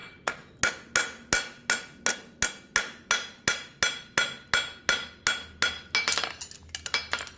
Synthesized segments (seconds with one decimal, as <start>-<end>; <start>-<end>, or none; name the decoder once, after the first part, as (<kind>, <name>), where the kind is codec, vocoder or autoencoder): none